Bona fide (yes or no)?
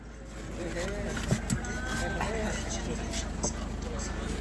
yes